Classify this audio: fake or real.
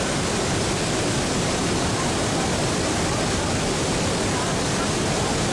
real